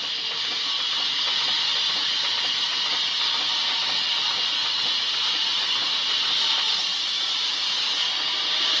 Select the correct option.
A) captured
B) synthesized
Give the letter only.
A